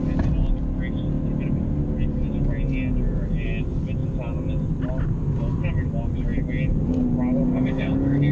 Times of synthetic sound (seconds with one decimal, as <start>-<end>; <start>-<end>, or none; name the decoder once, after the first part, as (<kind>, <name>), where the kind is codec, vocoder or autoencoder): none